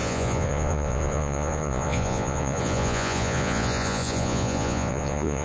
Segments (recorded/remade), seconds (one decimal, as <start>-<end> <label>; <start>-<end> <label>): 0.0-5.4 remade